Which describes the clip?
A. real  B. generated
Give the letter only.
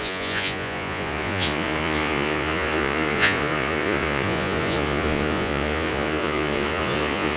B